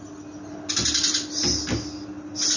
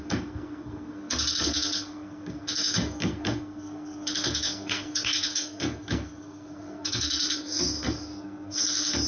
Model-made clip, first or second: second